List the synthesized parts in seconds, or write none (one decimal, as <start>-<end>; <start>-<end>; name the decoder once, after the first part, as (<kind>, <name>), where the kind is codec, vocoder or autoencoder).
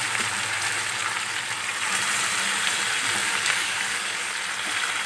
3.2-4.3 (codec, DAC)